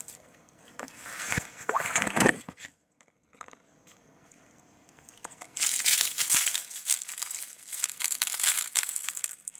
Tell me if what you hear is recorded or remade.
remade